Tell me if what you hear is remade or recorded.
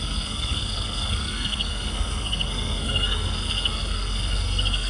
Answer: remade